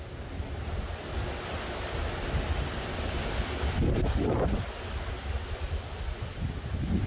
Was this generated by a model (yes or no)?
no